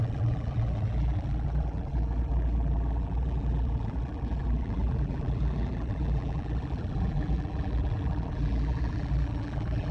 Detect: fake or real fake